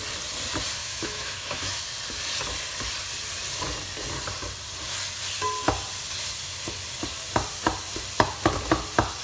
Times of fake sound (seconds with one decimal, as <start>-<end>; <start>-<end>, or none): 0.8-1.8

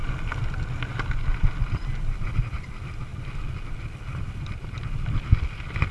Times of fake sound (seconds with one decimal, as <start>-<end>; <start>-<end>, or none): none

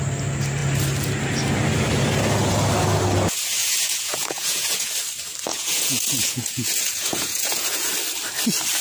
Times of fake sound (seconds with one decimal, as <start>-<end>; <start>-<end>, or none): 3.6-4.9; 5.5-7.9